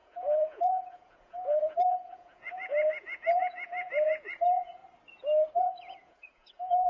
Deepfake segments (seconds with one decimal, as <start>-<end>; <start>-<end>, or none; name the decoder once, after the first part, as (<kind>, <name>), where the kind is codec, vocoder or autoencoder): 0.0-4.8 (vocoder, Vocos); 5.6-6.9